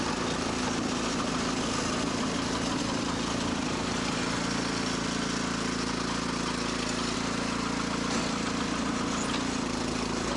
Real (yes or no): yes